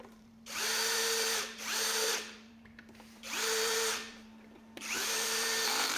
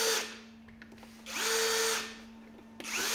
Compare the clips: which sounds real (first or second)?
second